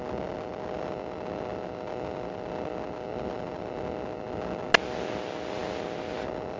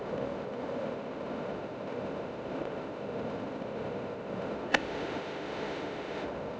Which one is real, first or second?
first